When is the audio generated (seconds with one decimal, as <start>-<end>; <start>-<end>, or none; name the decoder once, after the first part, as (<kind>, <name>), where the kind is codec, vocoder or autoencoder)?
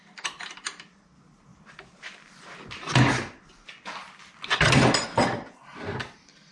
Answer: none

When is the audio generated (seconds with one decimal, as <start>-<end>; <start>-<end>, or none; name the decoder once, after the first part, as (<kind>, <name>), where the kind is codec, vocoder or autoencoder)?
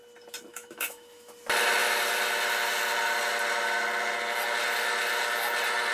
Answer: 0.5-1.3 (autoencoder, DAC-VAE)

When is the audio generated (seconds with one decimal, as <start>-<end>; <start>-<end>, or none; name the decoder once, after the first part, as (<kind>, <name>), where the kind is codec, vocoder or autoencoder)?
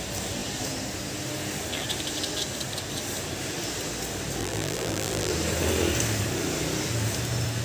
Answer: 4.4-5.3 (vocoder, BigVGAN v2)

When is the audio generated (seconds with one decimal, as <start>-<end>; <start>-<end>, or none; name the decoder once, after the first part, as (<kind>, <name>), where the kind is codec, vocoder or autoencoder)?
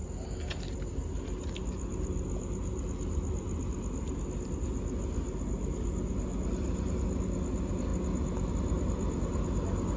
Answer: none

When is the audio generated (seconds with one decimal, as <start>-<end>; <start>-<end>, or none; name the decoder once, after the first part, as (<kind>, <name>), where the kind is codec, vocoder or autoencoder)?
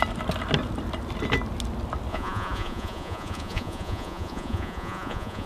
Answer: 2.1-5.5 (vocoder, Vocos)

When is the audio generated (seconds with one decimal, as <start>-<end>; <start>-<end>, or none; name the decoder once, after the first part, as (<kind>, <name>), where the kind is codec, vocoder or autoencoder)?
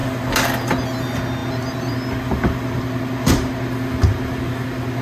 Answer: none